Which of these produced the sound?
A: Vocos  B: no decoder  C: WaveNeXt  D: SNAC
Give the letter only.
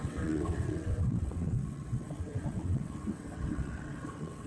C